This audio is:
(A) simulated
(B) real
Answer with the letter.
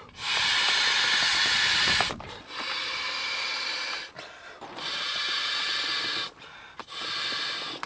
B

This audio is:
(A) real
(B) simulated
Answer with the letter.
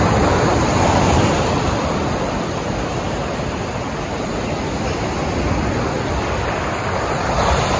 A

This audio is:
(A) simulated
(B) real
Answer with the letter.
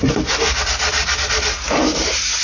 B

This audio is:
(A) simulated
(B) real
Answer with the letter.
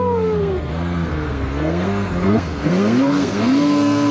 A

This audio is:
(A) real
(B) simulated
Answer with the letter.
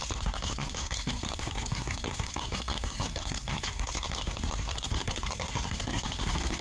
B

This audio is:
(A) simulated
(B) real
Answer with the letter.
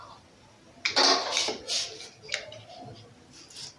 B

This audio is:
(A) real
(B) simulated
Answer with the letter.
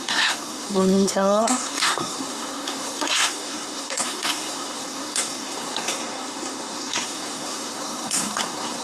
B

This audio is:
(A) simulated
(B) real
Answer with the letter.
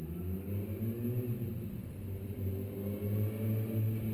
B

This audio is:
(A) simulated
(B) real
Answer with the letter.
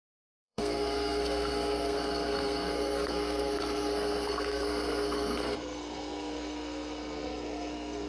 A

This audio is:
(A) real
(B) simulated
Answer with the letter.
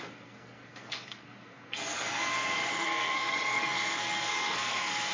B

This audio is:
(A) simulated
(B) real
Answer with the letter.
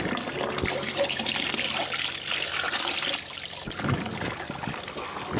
B